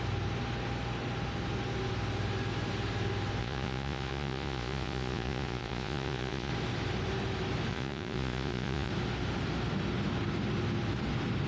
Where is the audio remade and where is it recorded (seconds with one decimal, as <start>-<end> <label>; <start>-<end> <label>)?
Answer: 0.0-3.4 recorded; 3.4-6.5 remade; 6.5-7.7 recorded; 7.7-8.9 remade; 8.9-11.5 recorded